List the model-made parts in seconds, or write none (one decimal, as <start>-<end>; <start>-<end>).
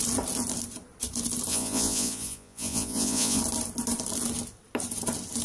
1.5-3.4